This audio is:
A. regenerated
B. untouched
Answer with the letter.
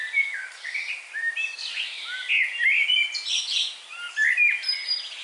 B